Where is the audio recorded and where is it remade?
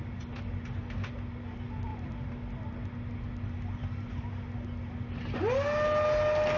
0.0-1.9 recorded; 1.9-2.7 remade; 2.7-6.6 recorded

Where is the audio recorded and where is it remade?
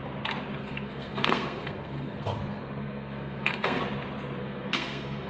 0.0-0.6 recorded; 0.6-3.8 remade; 3.8-4.4 recorded; 4.4-5.3 remade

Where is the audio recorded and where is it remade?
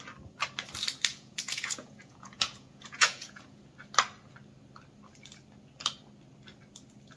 0.0-1.1 recorded; 1.1-3.6 remade; 3.6-7.2 recorded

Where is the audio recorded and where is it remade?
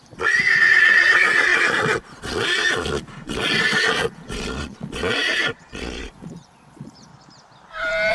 0.0-7.1 remade; 7.1-8.1 recorded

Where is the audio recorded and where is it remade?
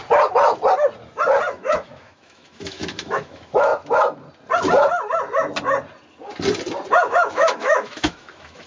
0.0-1.5 recorded; 1.5-3.7 remade; 3.7-6.9 recorded; 6.9-8.7 remade